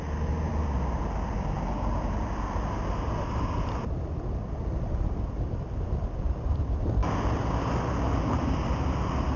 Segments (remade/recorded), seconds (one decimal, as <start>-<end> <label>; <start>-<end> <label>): 0.0-9.4 recorded